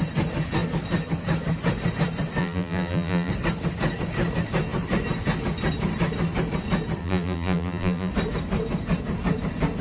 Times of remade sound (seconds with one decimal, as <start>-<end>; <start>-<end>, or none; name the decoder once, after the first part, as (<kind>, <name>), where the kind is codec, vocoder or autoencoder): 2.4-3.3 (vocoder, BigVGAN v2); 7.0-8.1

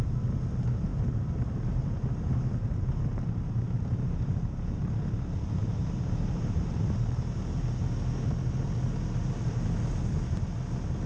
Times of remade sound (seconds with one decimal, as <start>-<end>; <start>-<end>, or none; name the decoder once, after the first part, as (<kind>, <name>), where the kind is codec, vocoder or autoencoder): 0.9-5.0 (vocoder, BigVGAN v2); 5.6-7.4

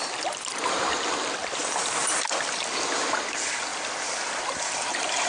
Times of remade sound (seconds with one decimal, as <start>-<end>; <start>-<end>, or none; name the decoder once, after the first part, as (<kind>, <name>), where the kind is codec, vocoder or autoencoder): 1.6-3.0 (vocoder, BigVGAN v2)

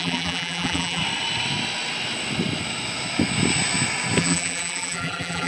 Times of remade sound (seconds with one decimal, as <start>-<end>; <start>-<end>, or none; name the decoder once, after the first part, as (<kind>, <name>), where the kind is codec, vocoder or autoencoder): 0.0-1.0 (vocoder, BigVGAN v2); 4.2-5.5